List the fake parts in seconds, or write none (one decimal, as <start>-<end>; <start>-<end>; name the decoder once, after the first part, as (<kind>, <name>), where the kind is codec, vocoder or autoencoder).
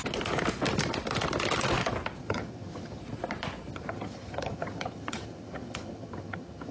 2.2-3.0 (vocoder, HiFi-GAN); 3.7-6.7